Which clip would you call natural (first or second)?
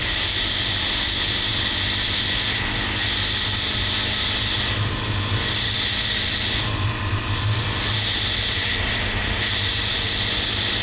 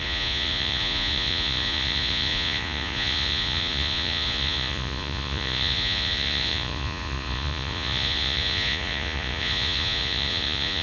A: first